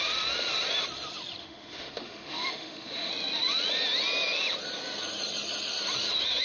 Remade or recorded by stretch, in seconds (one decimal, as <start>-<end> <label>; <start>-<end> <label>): 0.0-1.4 recorded; 1.4-3.1 remade; 3.1-6.4 recorded